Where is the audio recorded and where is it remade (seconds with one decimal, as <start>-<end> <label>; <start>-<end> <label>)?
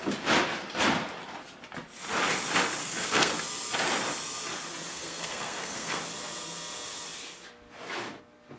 0.0-2.8 recorded; 2.8-3.3 remade; 3.3-4.9 recorded; 4.9-6.0 remade; 6.0-8.6 recorded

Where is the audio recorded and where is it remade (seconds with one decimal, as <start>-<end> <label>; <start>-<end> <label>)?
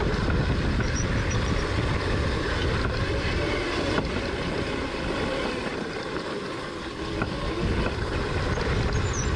0.0-9.4 recorded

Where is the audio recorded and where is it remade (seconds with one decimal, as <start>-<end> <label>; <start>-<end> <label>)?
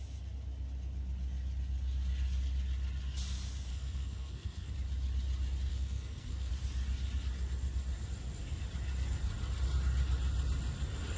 0.0-3.7 recorded; 3.7-4.7 remade; 4.7-5.7 recorded; 5.7-6.5 remade; 6.5-11.2 recorded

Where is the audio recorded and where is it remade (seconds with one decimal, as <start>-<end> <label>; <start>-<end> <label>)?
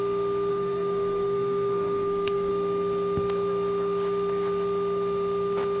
0.0-0.5 recorded; 0.5-2.5 remade; 2.5-5.8 recorded